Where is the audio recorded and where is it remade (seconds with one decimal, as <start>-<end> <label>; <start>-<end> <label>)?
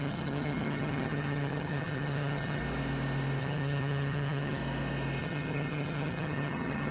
0.0-2.6 remade; 2.6-3.4 recorded; 3.4-4.6 remade; 4.6-5.2 recorded; 5.2-6.9 remade